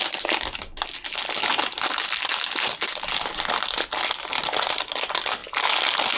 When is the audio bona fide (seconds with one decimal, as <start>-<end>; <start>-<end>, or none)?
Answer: 0.0-6.2